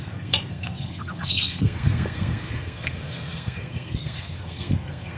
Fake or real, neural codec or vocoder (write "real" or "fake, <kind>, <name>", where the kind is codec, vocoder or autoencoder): fake, codec, SNAC